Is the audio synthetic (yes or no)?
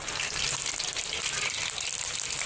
no